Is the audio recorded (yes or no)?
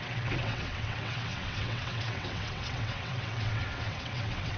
no